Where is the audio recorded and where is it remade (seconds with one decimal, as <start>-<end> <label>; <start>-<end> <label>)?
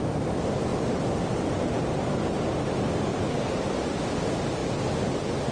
0.0-3.1 recorded; 3.1-3.6 remade; 3.6-5.5 recorded